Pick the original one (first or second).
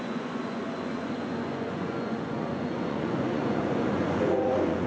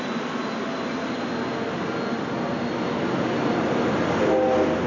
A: second